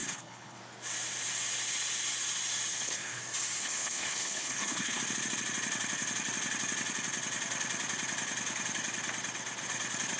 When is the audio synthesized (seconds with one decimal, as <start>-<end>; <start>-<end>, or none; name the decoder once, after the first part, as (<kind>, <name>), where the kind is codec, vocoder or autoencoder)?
0.0-0.6 (codec, HILCodec); 2.7-3.2; 3.6-5.0